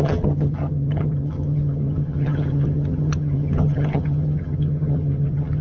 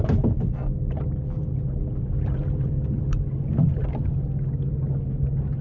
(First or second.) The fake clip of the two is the first